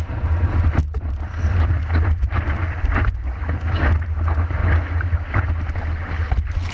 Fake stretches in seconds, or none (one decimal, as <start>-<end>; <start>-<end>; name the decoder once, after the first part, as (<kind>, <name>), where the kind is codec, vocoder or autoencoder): none

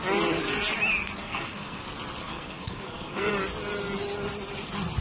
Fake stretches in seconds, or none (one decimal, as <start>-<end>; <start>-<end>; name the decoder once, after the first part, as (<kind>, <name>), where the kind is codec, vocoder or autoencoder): 1.2-1.8 (codec, SNAC); 2.2-3.3

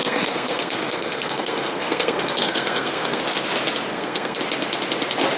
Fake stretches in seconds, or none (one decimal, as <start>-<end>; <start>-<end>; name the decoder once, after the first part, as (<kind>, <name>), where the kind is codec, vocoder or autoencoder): 0.0-3.2 (codec, SNAC); 3.9-4.4

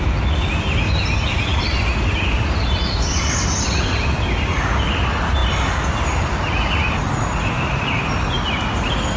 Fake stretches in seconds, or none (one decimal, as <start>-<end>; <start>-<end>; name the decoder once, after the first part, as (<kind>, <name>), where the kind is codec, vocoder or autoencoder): none

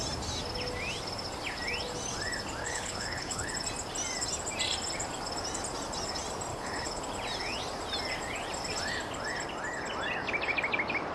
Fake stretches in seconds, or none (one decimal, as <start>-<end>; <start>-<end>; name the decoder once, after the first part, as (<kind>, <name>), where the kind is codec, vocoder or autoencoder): 2.6-3.5 (codec, HILCodec); 6.5-7.0

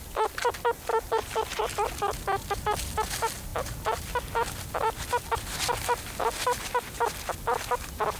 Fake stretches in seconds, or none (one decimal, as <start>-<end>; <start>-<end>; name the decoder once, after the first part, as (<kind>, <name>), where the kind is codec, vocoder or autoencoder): none

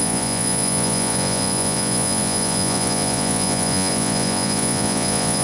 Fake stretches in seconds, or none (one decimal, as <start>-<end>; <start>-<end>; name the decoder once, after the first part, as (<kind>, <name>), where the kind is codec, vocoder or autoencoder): 0.0-5.4 (vocoder, Vocos)